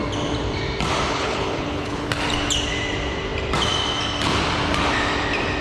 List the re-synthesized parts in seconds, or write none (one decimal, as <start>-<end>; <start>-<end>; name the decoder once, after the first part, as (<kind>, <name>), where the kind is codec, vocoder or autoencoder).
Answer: 1.1-2.1 (codec, HILCodec)